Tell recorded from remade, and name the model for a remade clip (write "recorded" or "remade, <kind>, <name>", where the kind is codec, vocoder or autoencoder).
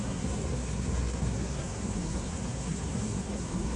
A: remade, codec, SNAC